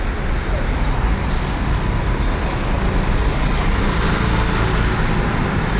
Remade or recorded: recorded